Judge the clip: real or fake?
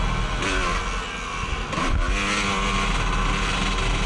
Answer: real